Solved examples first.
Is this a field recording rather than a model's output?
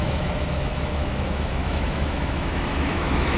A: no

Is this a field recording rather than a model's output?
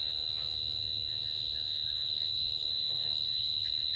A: no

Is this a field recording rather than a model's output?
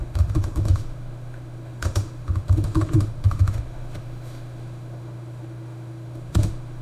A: no